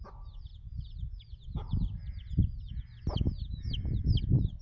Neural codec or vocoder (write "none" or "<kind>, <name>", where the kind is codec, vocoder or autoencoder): none